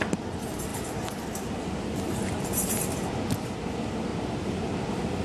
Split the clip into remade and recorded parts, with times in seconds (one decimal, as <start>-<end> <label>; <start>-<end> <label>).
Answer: 0.0-0.7 recorded; 0.7-2.4 remade; 2.4-4.1 recorded; 4.1-4.7 remade; 4.7-5.2 recorded